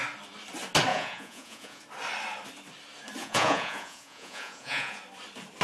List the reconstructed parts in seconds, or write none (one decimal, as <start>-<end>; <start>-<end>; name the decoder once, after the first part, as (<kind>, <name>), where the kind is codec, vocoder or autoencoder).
0.9-1.8 (vocoder, Vocos); 3.2-5.0